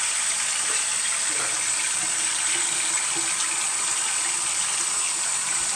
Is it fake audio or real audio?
real